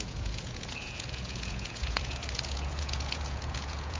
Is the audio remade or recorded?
remade